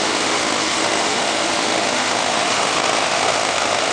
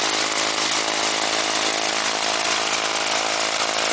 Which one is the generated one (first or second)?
first